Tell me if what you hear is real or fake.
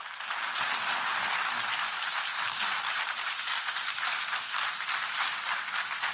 real